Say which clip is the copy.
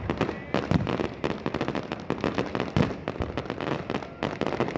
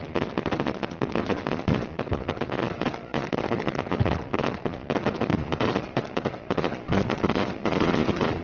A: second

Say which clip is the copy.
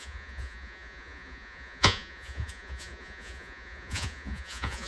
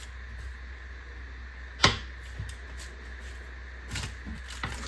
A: first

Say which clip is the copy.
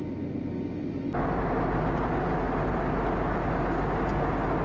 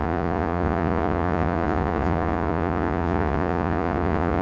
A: second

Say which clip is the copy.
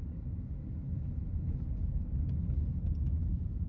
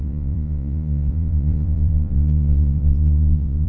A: second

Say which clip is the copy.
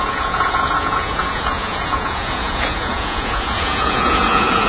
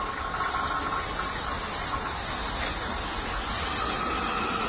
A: first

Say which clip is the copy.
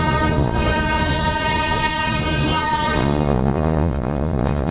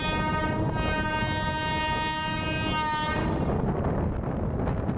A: first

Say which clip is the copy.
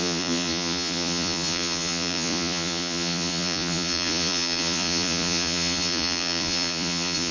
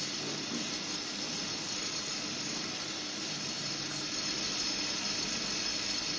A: first